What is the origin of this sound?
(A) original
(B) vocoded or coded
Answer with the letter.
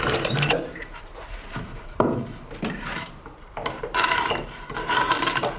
B